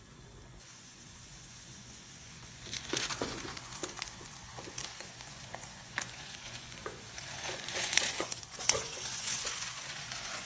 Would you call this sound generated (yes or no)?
yes